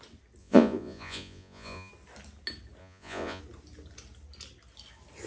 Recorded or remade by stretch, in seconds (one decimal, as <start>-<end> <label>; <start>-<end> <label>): 0.0-0.4 recorded; 0.4-1.9 remade; 1.9-2.8 recorded; 2.8-3.4 remade; 3.4-5.3 recorded